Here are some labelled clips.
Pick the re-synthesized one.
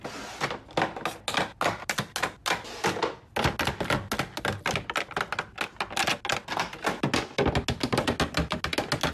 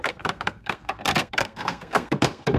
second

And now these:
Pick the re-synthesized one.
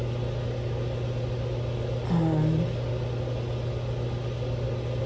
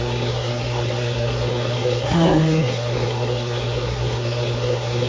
second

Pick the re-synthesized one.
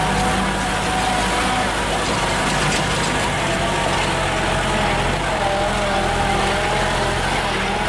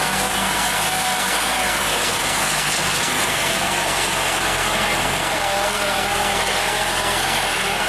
second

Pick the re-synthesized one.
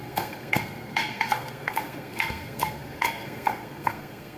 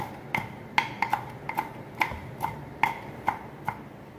first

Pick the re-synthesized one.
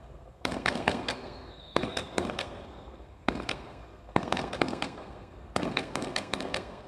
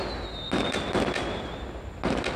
first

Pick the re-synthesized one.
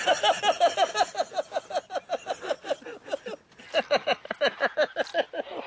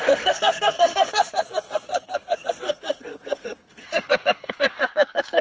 second